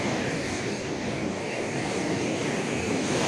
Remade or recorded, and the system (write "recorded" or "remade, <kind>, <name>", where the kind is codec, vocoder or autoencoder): remade, codec, DAC